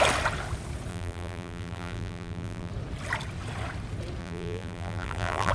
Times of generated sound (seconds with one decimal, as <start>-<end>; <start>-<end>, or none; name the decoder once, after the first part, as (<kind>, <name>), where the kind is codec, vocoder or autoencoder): 0.9-2.7 (vocoder, BigVGAN v2); 4.2-5.5